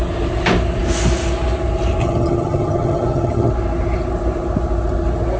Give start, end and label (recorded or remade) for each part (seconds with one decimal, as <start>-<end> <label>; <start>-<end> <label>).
0.0-2.0 recorded; 2.0-3.5 remade; 3.5-5.4 recorded